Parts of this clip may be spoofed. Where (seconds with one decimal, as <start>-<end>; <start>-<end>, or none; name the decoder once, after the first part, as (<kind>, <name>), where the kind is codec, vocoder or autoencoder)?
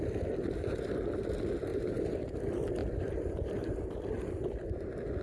1.7-2.4 (vocoder, BigVGAN v2); 2.8-4.0